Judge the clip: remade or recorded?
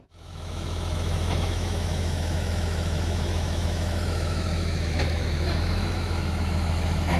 remade